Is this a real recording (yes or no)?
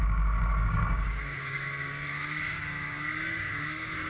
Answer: no